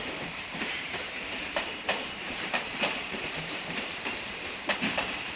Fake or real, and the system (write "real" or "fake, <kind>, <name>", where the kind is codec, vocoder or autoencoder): fake, vocoder, BigVGAN v2